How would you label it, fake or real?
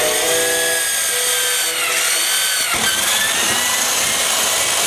real